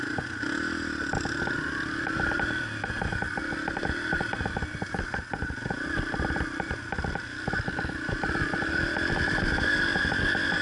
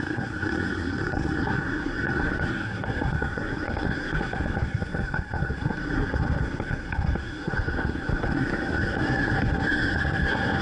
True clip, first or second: first